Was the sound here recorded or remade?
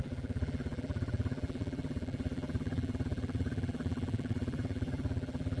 remade